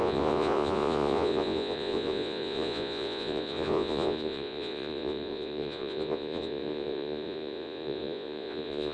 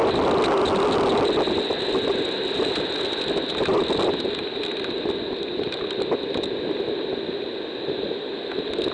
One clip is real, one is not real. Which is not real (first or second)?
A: first